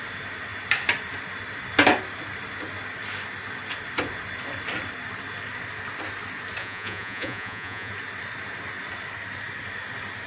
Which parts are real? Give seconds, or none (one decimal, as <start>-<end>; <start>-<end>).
0.0-6.6; 7.9-10.3

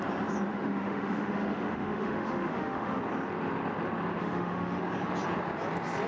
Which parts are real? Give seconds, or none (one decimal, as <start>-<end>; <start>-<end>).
0.0-0.5; 3.0-4.2; 4.8-6.1

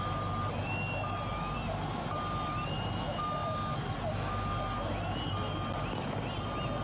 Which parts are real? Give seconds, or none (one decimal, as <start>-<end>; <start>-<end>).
0.0-6.8

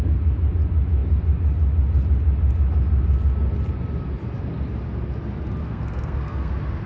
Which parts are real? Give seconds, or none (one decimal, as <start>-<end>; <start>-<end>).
0.0-5.6; 6.5-6.9

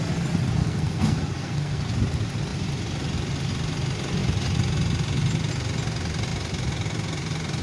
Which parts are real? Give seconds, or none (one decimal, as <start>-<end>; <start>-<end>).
0.0-0.6; 1.8-7.6

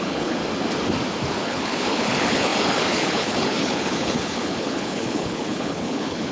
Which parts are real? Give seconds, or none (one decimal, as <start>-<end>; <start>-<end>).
0.4-1.3

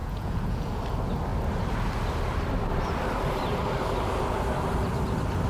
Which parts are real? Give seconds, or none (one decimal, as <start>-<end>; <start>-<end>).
0.8-5.5